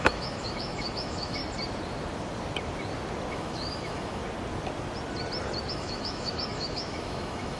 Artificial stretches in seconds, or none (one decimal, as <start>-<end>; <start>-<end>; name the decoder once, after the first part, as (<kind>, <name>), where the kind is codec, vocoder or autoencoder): 0.0-1.4 (autoencoder, DAC-VAE); 3.3-4.2; 5.7-7.6